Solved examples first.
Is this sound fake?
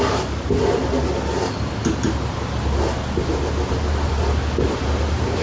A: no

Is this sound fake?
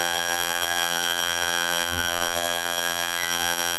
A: yes